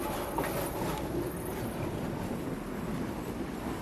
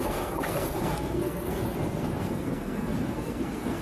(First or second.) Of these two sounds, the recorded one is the first